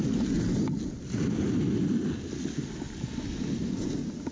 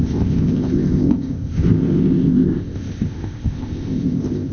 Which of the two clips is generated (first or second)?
second